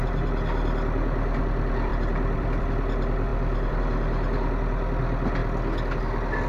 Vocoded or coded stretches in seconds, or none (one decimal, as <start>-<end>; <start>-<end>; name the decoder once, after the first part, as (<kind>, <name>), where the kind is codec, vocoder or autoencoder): 1.9-2.6 (vocoder, BigVGAN v2); 3.3-3.8